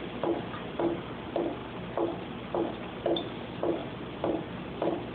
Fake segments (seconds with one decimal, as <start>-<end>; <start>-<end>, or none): none